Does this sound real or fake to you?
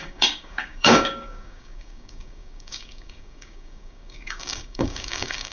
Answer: fake